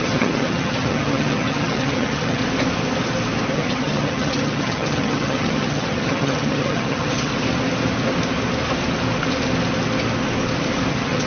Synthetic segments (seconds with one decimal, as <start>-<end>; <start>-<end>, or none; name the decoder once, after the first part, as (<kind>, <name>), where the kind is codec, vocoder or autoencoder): 0.0-2.4 (vocoder, HiFi-GAN); 3.5-7.3; 10.9-11.3